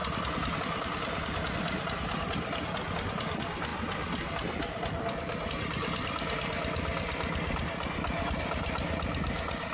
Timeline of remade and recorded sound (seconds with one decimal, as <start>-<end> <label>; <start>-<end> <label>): 0.0-0.6 remade; 0.6-9.7 recorded

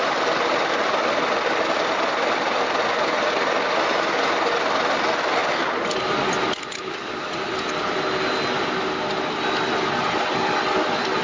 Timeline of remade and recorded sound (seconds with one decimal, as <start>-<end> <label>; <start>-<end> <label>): 0.0-11.2 recorded

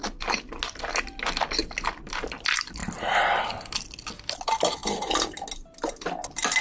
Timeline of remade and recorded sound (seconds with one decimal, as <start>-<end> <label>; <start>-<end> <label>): 0.0-6.6 recorded

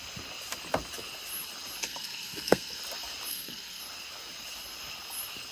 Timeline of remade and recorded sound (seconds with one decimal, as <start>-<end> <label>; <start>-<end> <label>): 0.0-1.8 recorded; 1.8-2.8 remade; 2.8-3.3 recorded; 3.3-3.8 remade; 3.8-5.5 recorded